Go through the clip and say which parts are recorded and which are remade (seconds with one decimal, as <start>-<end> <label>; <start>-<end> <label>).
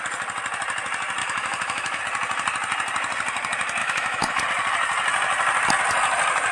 0.0-1.2 recorded; 1.2-2.0 remade; 2.0-3.8 recorded; 3.8-4.4 remade; 4.4-6.5 recorded